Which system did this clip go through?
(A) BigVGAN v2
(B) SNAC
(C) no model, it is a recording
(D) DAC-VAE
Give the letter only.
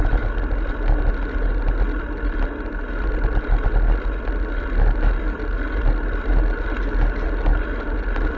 C